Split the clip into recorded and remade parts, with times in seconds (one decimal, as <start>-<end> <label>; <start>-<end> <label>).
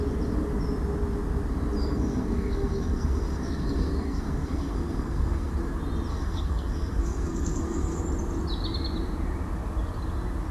0.0-1.8 recorded; 1.8-5.5 remade; 5.5-6.1 recorded; 6.1-8.0 remade; 8.0-10.5 recorded